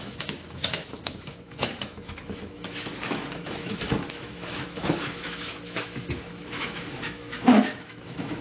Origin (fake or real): fake